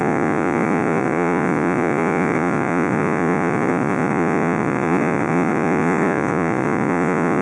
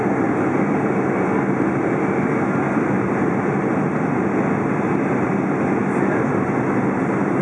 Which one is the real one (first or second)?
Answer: second